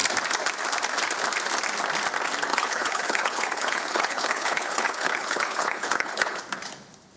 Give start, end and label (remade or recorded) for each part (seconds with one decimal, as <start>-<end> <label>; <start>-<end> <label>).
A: 0.0-2.5 recorded; 2.5-6.4 remade; 6.4-7.2 recorded